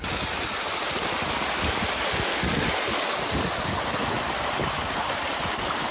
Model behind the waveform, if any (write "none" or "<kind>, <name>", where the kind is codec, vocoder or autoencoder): none